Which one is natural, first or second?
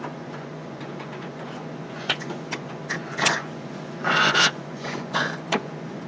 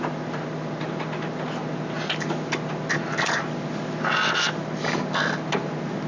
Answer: second